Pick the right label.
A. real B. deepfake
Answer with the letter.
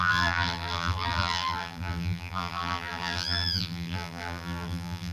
B